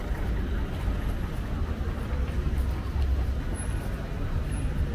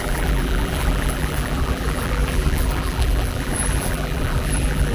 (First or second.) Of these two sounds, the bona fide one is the first